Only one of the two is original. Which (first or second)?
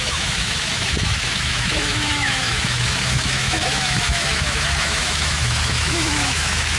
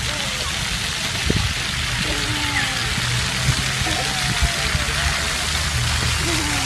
second